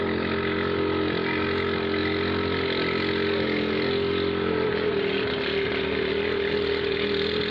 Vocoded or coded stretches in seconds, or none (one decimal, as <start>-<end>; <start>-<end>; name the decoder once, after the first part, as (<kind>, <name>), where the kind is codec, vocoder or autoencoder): none